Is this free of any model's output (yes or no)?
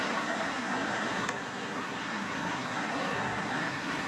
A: no